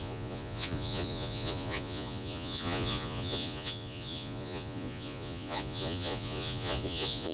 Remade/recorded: remade